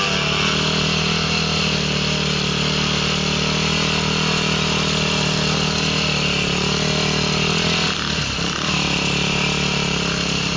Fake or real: real